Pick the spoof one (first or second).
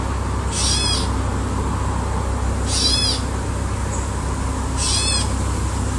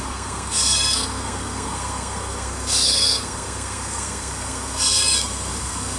second